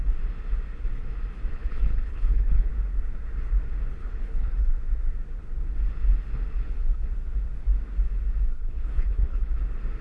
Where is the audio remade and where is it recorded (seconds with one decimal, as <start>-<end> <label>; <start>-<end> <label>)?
0.0-1.5 recorded; 1.5-2.7 remade; 2.7-4.0 recorded; 4.0-4.7 remade; 4.7-8.6 recorded; 8.6-9.5 remade; 9.5-10.0 recorded